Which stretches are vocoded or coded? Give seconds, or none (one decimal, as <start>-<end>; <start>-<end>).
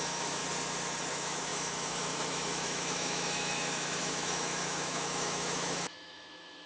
0.0-0.4; 1.1-6.7